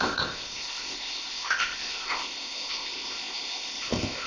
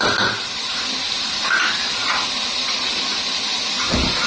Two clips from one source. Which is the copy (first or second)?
first